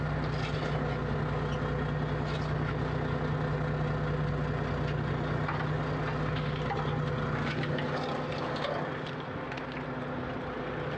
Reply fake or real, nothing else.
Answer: real